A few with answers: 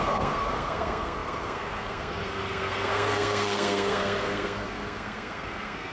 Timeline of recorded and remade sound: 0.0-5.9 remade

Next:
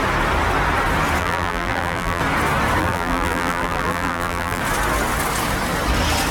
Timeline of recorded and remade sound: 0.0-1.2 recorded; 1.2-2.2 remade; 2.2-2.8 recorded; 2.8-4.6 remade; 4.6-6.3 recorded

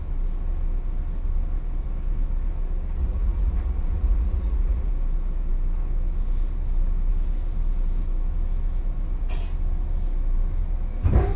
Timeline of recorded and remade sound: 0.0-3.0 recorded; 3.0-4.9 remade; 4.9-11.4 recorded

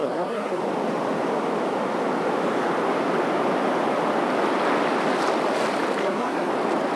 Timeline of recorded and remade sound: 0.0-0.6 remade; 0.6-6.0 recorded; 6.0-6.5 remade; 6.5-7.0 recorded

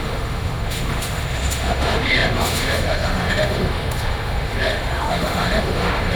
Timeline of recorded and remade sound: 0.0-6.2 remade

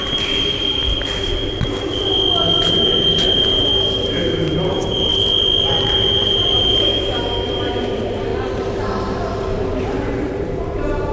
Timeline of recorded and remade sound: 0.0-0.8 remade; 0.8-2.6 recorded; 2.6-5.1 remade; 5.1-5.7 recorded; 5.7-11.1 remade

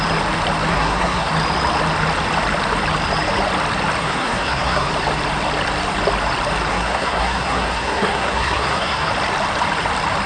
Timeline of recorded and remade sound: 0.0-0.7 recorded; 0.7-1.3 remade; 1.3-4.0 recorded; 4.0-4.9 remade; 4.9-6.7 recorded; 6.7-9.1 remade; 9.1-10.3 recorded

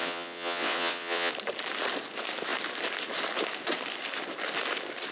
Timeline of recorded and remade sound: 0.0-1.3 remade; 1.3-5.1 recorded